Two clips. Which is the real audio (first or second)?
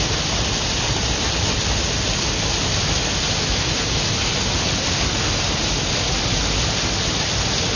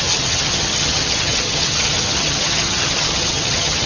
first